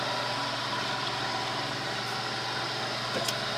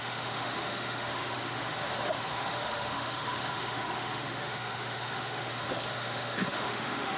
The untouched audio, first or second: first